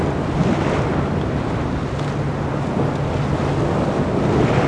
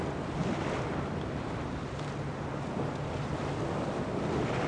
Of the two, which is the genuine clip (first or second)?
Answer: first